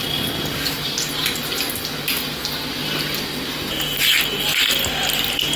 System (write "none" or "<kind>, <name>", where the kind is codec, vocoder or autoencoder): none